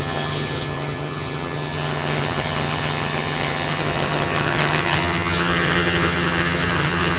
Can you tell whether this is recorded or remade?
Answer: remade